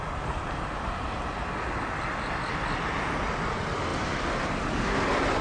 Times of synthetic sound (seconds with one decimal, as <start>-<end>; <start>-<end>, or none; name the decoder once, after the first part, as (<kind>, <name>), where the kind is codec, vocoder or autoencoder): none